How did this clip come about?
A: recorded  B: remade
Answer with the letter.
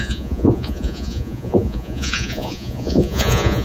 B